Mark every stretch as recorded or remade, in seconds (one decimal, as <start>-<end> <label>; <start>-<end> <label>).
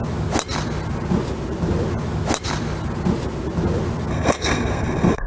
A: 0.0-4.1 recorded; 4.1-5.3 remade